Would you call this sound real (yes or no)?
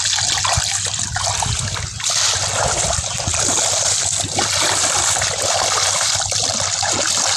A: yes